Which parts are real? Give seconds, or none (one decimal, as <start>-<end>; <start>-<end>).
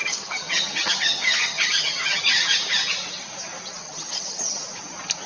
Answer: 2.2-3.8; 4.6-5.3